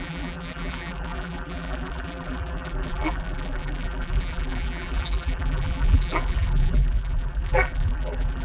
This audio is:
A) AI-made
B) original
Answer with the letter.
A